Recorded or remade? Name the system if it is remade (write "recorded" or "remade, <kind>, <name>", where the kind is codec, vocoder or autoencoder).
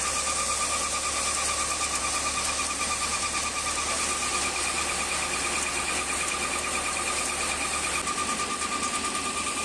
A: recorded